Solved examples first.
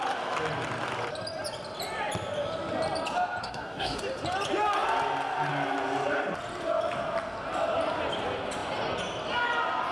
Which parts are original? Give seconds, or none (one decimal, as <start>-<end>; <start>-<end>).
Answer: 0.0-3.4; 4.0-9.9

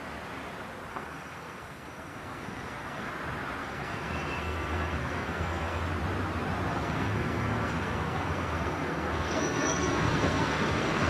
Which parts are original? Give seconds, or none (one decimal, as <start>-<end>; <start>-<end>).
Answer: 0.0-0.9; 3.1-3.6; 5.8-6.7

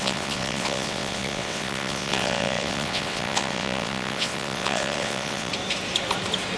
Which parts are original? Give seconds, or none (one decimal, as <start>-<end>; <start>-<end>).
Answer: 5.5-6.6

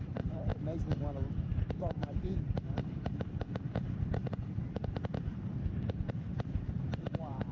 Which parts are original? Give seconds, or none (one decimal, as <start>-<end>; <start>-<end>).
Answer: 0.5-1.6

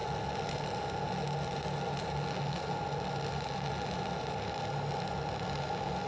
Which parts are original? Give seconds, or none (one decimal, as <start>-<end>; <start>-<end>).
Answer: 0.0-6.1